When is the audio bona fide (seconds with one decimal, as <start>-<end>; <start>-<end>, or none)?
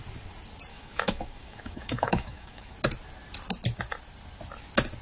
0.0-0.7; 2.7-5.0